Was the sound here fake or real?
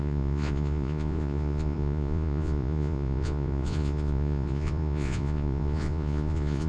fake